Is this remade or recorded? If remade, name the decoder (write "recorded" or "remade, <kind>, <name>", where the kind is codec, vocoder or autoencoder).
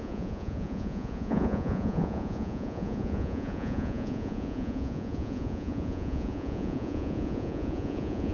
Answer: remade, vocoder, Vocos